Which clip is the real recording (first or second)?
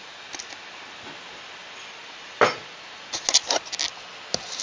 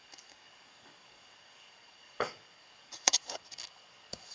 first